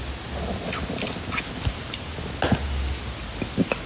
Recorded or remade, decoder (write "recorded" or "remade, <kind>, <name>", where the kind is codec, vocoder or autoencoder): recorded